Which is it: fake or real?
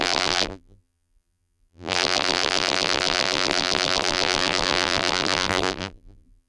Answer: fake